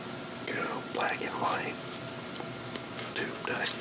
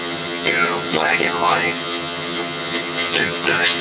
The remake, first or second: second